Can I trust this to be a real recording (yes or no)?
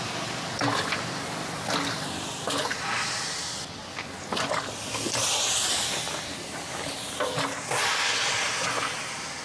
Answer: yes